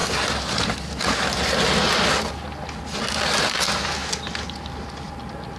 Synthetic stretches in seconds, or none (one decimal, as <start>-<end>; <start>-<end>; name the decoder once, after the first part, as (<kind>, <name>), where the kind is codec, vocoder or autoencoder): none